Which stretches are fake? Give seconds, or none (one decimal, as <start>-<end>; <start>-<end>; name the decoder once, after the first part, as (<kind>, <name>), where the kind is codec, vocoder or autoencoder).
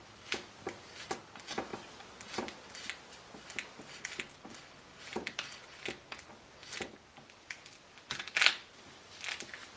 none